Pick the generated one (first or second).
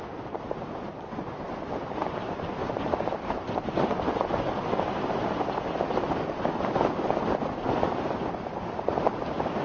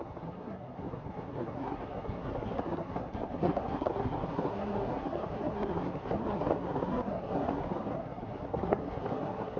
second